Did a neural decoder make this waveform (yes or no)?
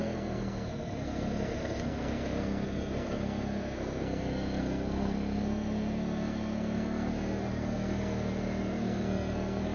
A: yes